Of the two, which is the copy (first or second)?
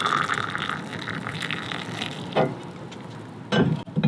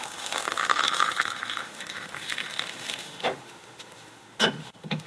second